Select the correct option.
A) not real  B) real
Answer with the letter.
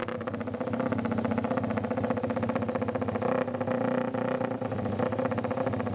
B